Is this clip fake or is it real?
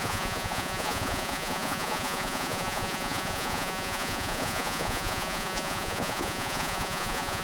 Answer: fake